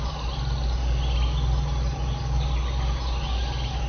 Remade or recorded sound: recorded